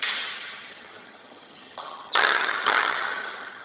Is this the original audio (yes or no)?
no